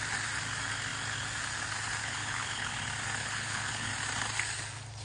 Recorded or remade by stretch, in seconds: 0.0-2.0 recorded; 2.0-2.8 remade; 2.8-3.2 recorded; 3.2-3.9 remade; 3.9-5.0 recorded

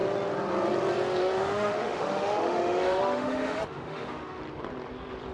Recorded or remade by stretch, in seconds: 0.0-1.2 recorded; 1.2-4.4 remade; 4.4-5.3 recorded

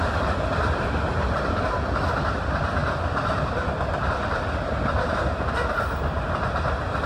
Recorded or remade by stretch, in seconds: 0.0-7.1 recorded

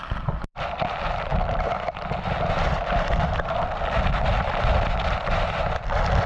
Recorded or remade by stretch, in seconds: 0.0-6.3 recorded

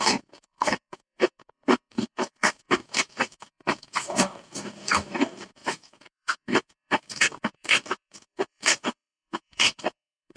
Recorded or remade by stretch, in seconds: 0.0-10.4 remade